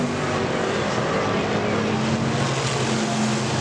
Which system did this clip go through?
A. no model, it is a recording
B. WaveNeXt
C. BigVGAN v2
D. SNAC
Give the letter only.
A